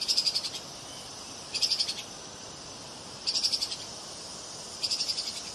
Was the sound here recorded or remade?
remade